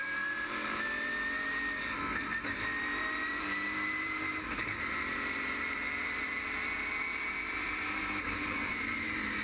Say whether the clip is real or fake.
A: fake